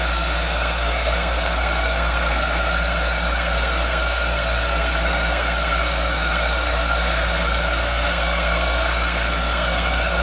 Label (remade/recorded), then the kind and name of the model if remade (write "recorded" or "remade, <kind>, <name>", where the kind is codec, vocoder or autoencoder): remade, codec, SNAC